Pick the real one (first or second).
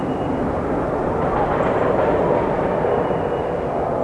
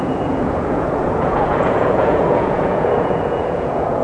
first